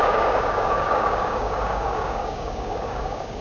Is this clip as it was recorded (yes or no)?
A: no